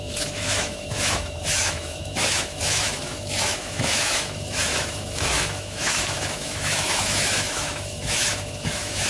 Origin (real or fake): fake